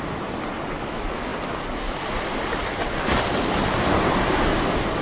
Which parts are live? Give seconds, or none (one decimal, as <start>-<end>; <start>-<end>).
0.0-5.0